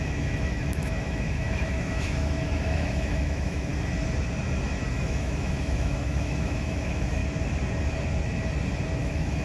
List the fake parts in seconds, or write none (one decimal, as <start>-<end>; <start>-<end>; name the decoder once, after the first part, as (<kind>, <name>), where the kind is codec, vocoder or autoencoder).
0.0-3.7 (autoencoder, DAC-VAE); 4.9-7.2; 9.0-9.4